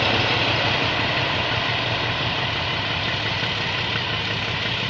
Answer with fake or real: fake